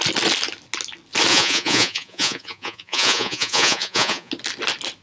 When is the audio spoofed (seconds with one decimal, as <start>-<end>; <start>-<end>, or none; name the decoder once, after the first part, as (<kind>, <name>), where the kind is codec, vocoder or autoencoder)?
1.3-4.3 (vocoder, Vocos)